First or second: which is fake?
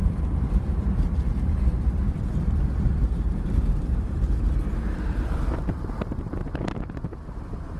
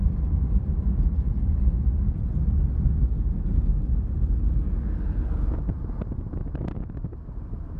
first